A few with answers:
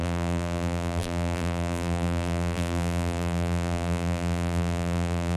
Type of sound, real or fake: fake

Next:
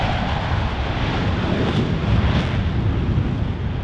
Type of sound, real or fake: real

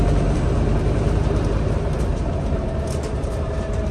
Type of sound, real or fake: fake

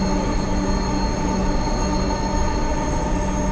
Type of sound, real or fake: real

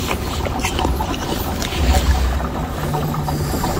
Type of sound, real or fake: real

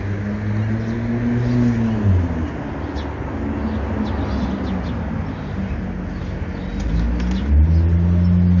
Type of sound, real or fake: real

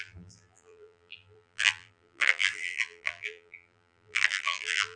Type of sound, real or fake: fake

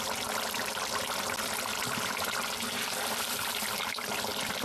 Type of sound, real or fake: real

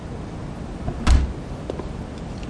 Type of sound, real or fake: real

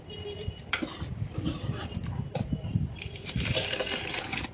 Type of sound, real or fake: fake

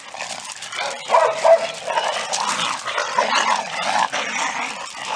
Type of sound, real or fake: real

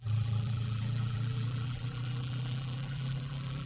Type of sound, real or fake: fake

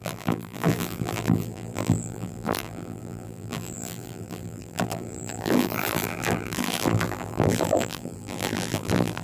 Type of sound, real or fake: fake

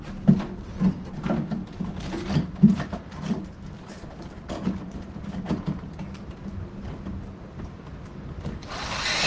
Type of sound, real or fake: real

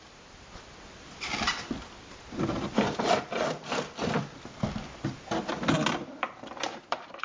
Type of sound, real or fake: fake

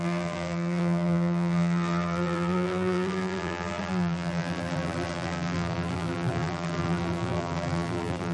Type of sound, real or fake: fake